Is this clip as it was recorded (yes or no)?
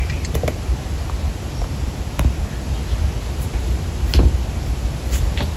yes